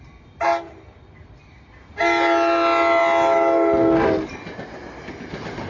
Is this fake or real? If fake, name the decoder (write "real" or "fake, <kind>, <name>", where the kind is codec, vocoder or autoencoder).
real